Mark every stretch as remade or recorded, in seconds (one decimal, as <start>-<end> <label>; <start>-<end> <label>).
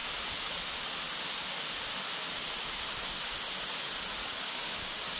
0.0-4.2 recorded; 4.2-5.2 remade